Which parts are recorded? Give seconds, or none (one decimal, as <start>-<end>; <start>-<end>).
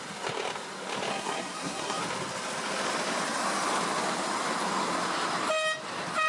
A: 0.0-1.1; 2.0-6.3